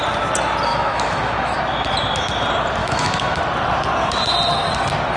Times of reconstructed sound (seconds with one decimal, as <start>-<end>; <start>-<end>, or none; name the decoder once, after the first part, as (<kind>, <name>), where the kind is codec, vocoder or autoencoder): 0.7-1.6 (autoencoder, DAC-VAE); 2.8-3.4